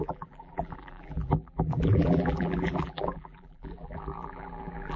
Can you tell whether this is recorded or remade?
remade